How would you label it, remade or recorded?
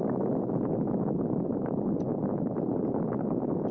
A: recorded